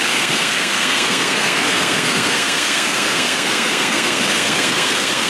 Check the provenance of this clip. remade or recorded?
remade